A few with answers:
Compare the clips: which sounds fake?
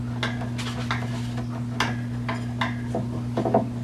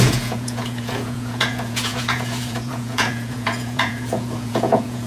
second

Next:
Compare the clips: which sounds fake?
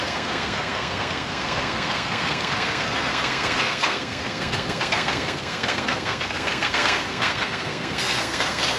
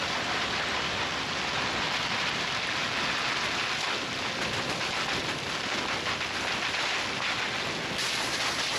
first